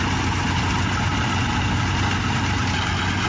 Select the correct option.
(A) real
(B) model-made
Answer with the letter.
A